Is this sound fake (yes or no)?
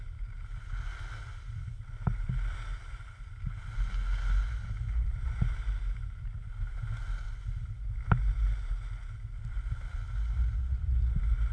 no